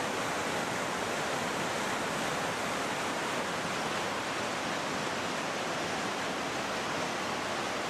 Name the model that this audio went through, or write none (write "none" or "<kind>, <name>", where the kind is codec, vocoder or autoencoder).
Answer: none